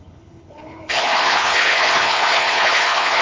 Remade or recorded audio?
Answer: remade